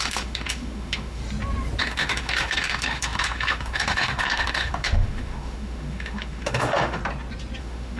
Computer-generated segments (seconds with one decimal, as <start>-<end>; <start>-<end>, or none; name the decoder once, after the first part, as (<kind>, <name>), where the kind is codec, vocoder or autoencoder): 0.0-1.2 (autoencoder, DAC-VAE); 1.8-7.0; 7.6-8.0